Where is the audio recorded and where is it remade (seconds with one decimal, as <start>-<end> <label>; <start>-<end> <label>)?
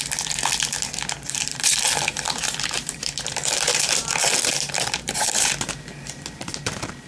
0.0-1.5 recorded; 1.5-5.7 remade; 5.7-7.1 recorded